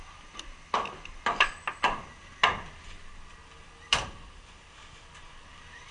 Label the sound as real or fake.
real